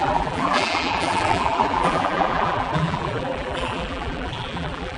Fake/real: fake